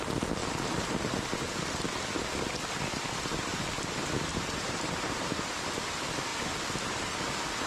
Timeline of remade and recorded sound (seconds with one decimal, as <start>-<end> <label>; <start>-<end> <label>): 0.0-4.3 recorded; 4.3-5.5 remade; 5.5-7.7 recorded